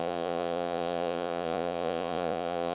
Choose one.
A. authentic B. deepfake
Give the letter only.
B